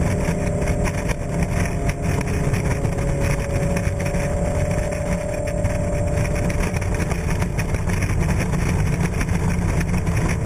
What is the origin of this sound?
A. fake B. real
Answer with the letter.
B